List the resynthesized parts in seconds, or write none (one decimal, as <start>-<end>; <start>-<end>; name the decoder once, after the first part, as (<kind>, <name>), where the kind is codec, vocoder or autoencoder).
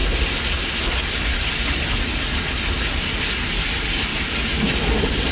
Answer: none